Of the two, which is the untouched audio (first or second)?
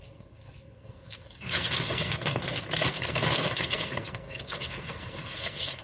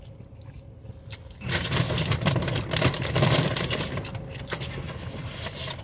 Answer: second